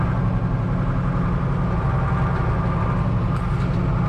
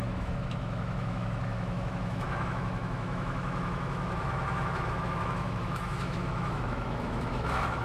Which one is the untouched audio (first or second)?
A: first